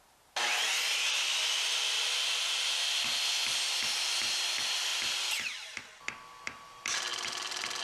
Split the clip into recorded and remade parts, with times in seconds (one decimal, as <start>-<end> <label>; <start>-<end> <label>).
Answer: 0.0-4.9 recorded; 4.9-5.8 remade; 5.8-7.1 recorded; 7.1-7.8 remade